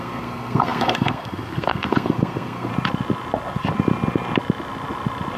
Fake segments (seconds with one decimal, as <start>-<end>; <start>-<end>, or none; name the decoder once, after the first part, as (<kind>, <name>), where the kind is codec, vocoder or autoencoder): 0.0-2.7 (codec, SNAC)